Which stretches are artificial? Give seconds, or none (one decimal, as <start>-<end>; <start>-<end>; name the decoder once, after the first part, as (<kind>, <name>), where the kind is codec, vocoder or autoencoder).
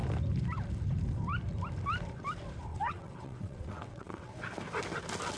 2.7-4.3 (vocoder, WaveNeXt)